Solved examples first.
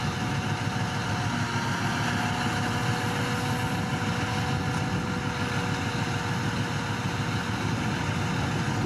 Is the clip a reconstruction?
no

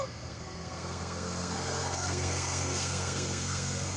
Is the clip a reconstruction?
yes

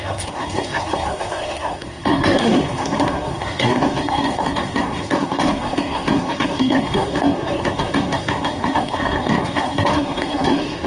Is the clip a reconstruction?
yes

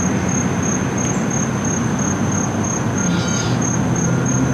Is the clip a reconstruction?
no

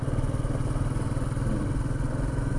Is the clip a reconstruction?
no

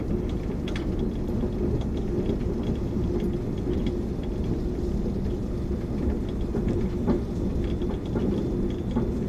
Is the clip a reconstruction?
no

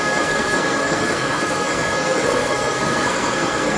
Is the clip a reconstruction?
yes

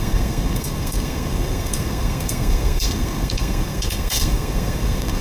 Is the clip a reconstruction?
yes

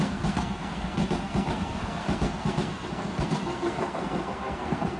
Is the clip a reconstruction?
yes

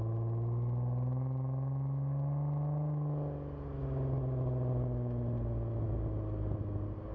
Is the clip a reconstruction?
no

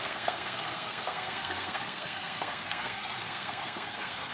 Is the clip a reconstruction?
yes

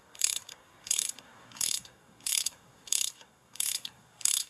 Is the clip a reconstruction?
yes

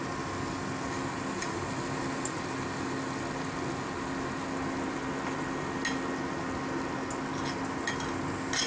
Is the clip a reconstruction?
no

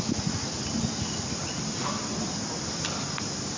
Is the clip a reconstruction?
no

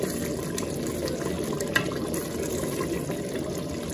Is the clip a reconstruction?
no